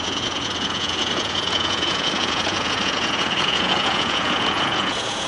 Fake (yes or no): yes